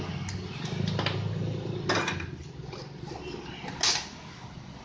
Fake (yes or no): no